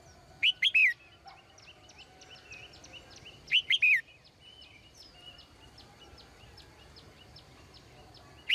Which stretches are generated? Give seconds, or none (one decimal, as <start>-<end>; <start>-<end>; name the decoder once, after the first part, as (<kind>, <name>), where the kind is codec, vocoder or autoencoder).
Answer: none